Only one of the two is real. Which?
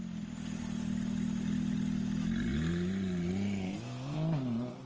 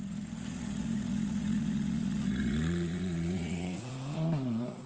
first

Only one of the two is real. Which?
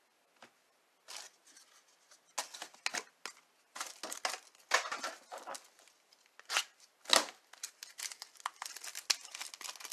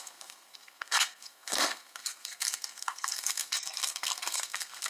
first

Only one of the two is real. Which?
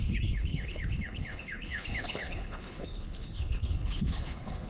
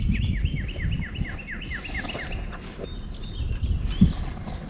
second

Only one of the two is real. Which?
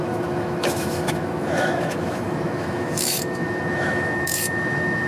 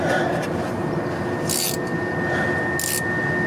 second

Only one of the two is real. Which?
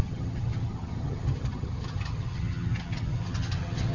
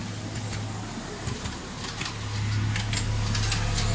second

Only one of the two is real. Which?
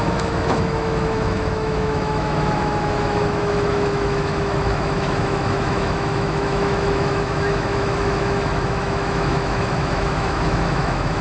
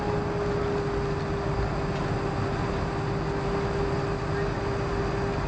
second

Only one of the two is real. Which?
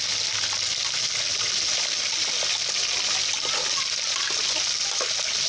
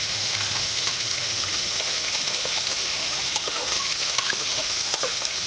first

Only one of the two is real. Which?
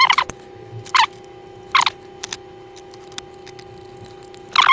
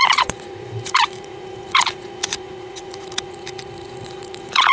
first